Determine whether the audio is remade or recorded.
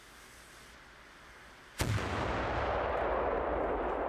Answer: recorded